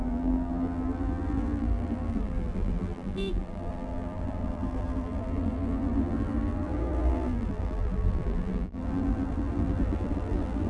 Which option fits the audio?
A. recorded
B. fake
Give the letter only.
B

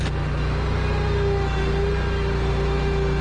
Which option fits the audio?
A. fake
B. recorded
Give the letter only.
B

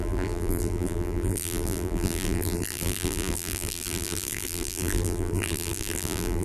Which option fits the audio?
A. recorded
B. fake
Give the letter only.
B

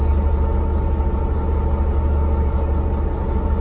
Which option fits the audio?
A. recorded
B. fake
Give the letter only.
A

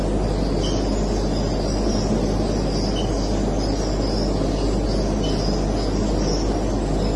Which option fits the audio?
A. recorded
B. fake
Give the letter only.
A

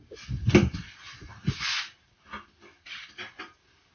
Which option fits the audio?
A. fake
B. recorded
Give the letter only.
B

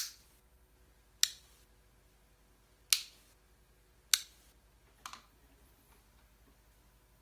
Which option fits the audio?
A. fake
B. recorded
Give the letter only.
B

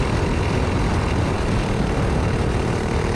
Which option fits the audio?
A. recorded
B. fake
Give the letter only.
B